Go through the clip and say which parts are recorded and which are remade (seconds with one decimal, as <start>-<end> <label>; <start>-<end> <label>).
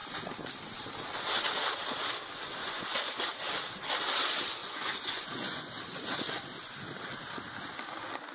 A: 0.0-2.6 recorded; 2.6-3.2 remade; 3.2-4.6 recorded; 4.6-5.7 remade; 5.7-8.3 recorded